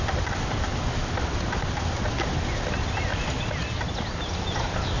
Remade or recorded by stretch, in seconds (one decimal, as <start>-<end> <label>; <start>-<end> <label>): 0.0-5.0 recorded